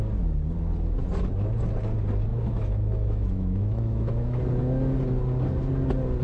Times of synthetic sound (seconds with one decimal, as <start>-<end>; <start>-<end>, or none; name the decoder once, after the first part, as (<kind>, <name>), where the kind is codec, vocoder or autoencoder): 2.3-4.4 (autoencoder, DAC-VAE)